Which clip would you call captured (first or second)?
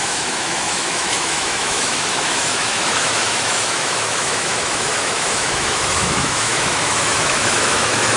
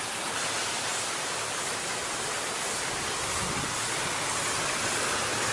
second